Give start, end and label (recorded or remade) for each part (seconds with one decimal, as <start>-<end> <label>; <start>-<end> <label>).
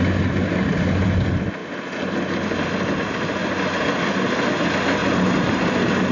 0.0-1.6 remade; 1.6-2.9 recorded; 2.9-5.0 remade; 5.0-5.5 recorded; 5.5-6.1 remade